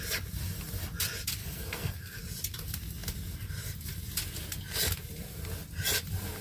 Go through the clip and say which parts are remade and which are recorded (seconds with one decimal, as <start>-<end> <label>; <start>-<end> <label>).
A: 0.0-1.4 recorded; 1.4-2.2 remade; 2.2-6.4 recorded